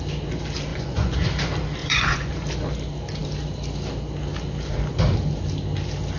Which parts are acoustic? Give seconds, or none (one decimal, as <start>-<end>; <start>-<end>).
0.0-0.7; 1.2-1.8; 2.3-6.2